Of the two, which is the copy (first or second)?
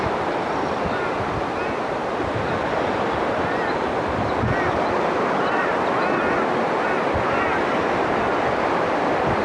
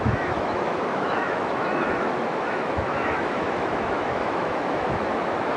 second